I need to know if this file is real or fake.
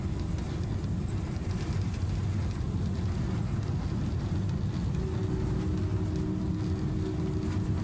real